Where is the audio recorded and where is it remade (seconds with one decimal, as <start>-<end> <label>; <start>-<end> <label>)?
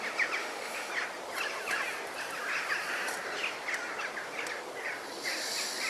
0.0-0.4 recorded; 0.4-0.9 remade; 0.9-5.9 recorded